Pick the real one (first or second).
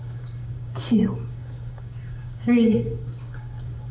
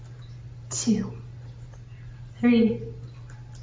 second